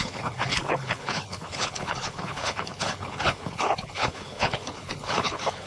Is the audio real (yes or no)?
no